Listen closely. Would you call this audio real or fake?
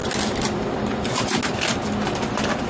real